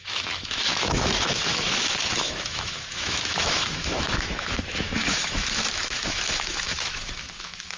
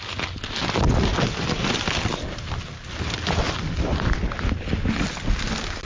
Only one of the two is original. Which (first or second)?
second